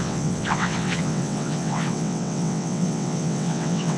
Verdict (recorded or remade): remade